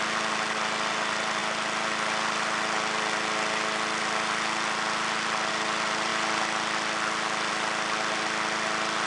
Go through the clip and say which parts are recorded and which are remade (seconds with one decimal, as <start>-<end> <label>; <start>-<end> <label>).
0.0-9.1 recorded